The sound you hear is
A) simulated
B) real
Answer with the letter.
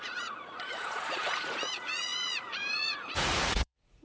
A